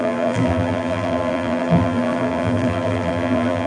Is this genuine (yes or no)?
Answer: no